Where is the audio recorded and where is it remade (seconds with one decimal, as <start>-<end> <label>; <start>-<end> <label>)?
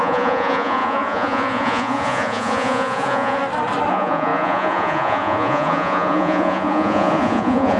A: 0.0-3.4 remade; 3.4-3.9 recorded; 3.9-7.8 remade